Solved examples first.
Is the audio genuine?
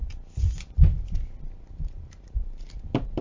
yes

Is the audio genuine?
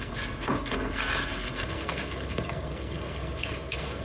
no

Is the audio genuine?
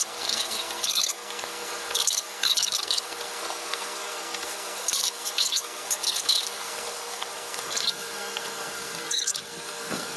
no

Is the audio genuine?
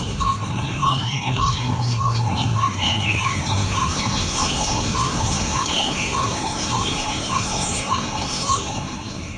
no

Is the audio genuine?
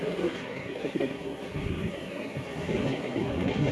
no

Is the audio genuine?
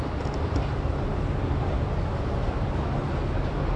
yes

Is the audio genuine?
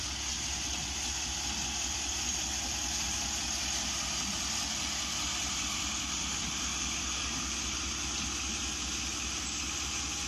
yes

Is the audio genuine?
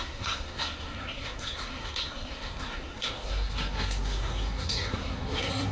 no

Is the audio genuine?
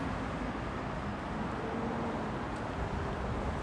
yes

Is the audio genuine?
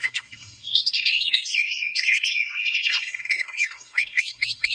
no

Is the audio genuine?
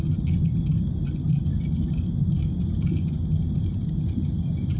yes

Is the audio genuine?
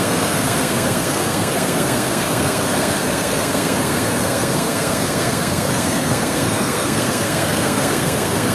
no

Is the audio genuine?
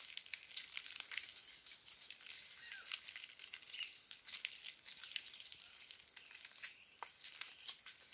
yes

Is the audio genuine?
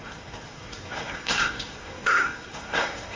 no